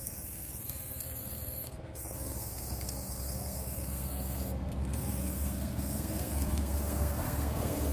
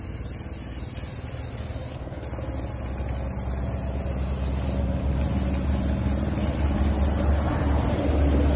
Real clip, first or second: second